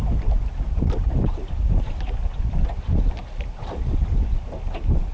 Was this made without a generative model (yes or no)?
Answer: yes